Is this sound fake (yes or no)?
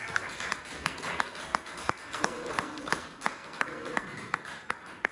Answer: yes